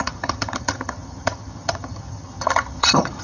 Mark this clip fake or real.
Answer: fake